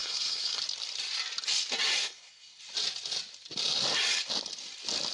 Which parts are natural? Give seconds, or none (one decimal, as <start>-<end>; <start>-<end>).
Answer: 0.6-2.0; 2.6-5.1